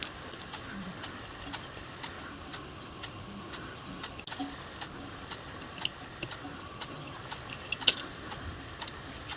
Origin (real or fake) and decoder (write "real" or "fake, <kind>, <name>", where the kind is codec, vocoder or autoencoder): real